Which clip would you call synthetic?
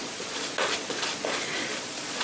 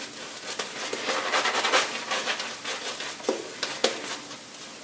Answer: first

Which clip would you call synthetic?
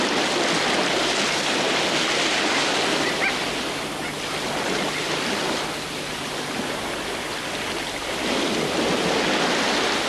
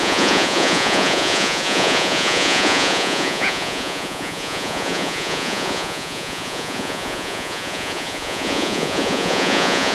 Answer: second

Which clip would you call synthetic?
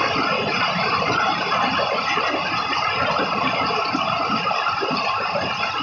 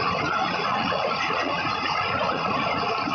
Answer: second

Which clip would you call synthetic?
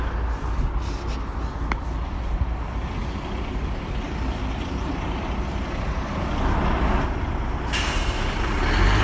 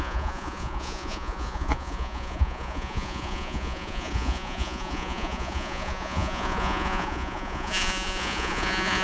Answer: second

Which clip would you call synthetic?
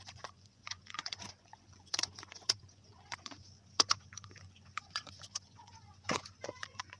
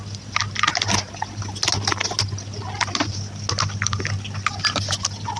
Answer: first